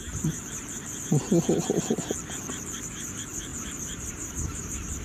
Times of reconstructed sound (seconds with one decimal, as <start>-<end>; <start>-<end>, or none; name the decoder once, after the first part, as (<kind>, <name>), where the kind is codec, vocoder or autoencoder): 0.0-1.2 (vocoder, BigVGAN v2); 2.5-5.0